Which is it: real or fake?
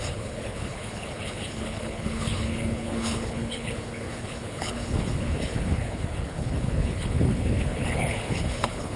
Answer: fake